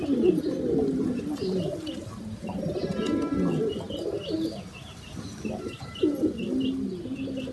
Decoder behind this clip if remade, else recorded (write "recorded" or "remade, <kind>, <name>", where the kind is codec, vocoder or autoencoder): recorded